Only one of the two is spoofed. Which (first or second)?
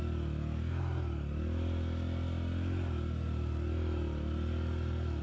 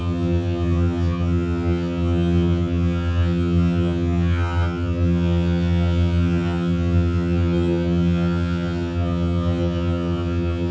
second